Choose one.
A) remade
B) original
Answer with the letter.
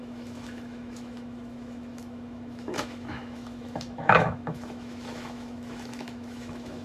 A